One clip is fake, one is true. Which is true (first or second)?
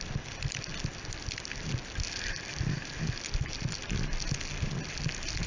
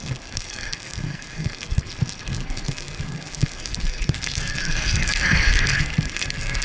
first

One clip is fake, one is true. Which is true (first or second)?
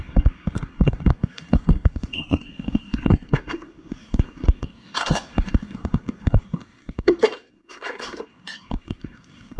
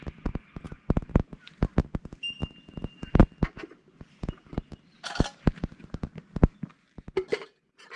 second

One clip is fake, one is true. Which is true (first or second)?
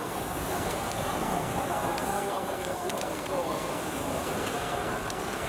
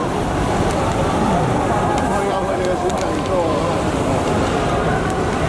second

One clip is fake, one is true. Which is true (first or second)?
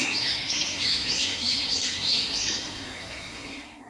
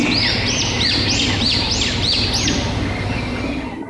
second